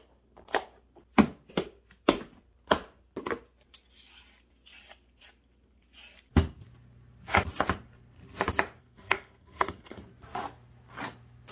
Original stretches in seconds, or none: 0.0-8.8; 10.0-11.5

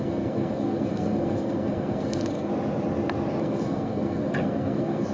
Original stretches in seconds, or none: 2.5-3.4

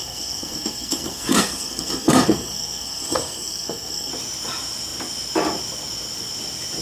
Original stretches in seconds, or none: 4.1-6.8